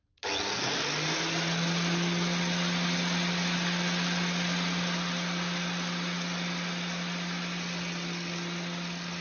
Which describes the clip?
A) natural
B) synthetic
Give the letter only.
A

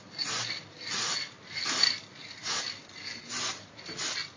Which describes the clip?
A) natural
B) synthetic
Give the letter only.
A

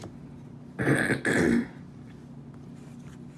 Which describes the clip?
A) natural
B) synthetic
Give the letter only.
A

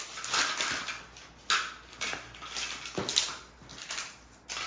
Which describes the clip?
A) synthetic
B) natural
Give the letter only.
B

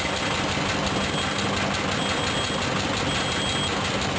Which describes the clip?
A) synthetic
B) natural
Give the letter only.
B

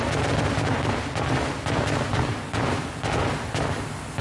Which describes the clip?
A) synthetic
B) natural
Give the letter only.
B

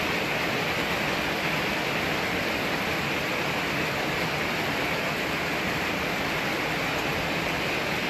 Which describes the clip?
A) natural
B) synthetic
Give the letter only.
A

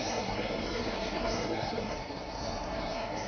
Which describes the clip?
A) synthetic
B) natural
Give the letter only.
A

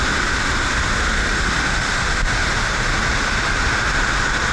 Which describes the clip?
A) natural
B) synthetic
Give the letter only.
A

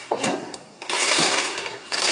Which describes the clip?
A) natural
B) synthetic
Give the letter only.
B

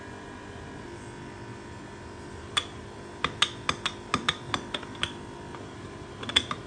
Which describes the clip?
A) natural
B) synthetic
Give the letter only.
A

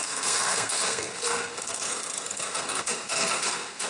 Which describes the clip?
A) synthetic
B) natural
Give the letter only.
A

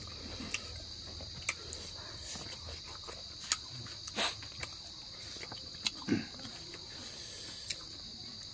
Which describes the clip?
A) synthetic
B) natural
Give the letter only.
B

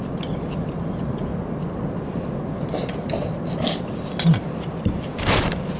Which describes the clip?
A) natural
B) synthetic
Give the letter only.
A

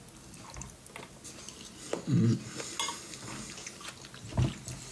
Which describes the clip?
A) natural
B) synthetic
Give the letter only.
A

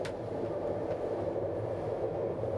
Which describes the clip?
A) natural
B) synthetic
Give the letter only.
A